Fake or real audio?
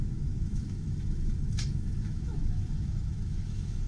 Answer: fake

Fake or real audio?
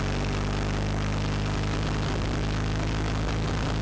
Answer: real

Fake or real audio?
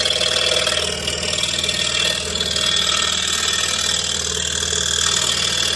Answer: real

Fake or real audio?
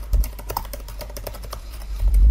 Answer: fake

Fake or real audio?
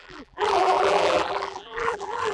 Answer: fake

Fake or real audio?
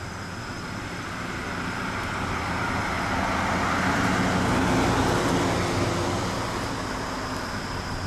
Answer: real